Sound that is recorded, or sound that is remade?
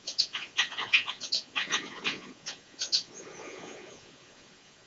remade